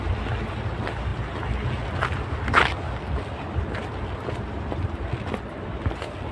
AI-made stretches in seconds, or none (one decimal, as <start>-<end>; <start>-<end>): none